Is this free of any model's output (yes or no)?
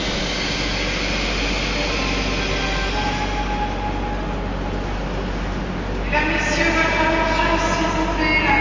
yes